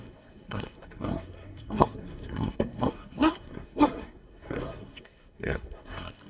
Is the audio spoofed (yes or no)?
yes